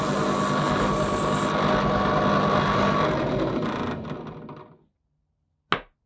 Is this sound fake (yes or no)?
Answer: no